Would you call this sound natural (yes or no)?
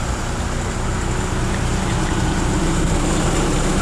yes